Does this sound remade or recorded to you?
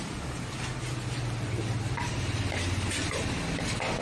recorded